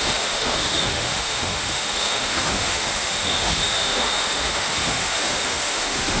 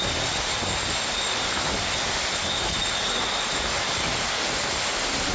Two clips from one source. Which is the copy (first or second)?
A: first